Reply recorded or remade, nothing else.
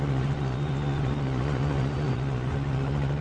remade